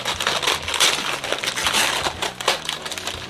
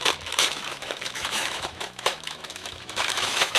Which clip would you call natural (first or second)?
first